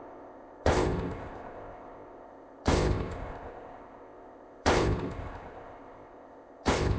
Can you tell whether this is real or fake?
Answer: fake